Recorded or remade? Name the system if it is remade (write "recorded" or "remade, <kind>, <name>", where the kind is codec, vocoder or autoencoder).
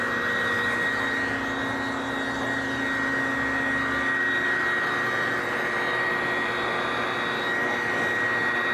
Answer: recorded